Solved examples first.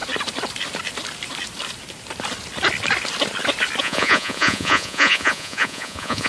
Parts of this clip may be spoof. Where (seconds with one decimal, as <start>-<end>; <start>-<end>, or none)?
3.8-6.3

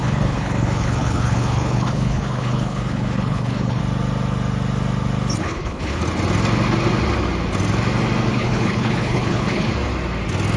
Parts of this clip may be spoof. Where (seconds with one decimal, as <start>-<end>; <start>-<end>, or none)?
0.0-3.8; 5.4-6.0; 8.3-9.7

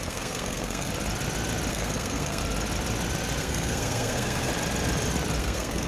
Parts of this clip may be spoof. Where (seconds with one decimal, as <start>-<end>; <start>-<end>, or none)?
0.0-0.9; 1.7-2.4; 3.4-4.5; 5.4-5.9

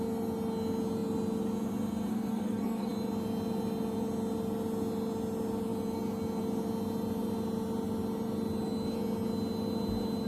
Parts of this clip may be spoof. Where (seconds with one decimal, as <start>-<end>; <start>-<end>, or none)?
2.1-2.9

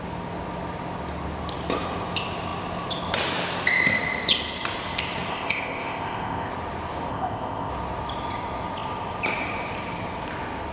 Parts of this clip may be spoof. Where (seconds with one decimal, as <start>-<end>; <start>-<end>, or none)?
5.3-6.5; 7.1-7.7

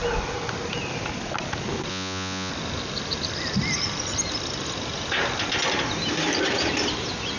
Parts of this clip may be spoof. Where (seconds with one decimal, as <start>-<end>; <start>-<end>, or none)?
1.9-2.5

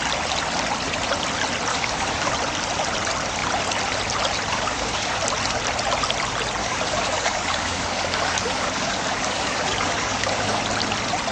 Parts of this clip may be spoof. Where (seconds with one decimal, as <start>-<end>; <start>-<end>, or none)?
1.7-2.3; 4.5-5.2; 6.6-10.6